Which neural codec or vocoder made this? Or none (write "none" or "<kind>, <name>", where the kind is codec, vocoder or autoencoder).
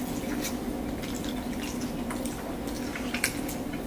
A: none